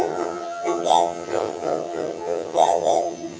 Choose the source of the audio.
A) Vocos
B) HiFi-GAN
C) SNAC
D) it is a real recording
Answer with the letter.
B